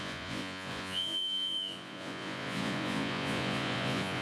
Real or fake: fake